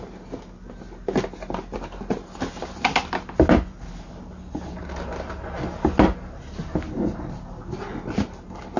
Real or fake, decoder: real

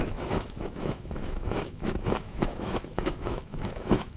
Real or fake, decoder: fake, autoencoder, DAC-VAE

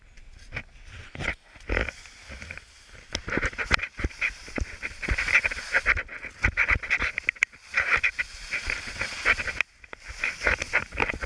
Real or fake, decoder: real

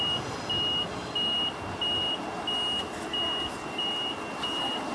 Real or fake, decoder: real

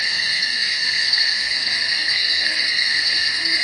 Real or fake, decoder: fake, codec, SNAC